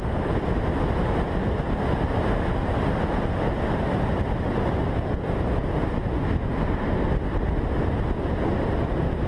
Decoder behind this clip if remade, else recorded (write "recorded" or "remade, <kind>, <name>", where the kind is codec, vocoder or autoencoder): recorded